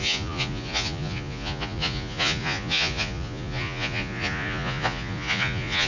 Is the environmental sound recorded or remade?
remade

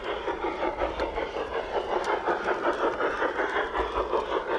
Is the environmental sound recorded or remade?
recorded